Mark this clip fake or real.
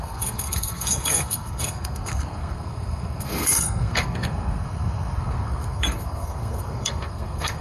fake